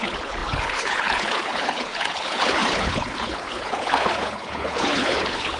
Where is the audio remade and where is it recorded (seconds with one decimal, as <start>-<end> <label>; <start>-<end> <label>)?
0.0-5.6 remade